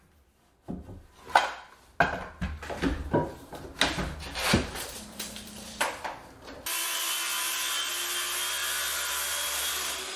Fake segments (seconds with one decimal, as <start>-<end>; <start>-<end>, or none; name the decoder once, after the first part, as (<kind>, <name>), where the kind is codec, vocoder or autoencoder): none